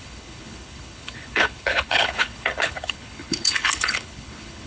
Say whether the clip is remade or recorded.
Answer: remade